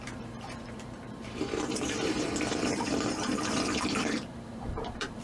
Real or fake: fake